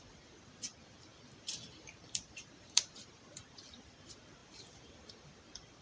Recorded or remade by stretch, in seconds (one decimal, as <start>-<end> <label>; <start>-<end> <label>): 0.0-5.8 remade